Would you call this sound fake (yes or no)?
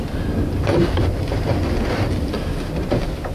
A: no